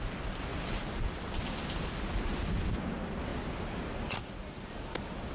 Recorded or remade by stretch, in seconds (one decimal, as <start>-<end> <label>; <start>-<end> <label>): 0.0-0.5 recorded; 0.5-2.4 remade; 2.4-5.3 recorded